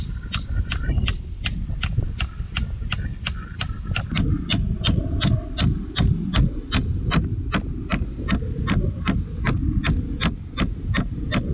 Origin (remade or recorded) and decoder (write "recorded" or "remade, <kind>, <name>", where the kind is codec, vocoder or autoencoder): recorded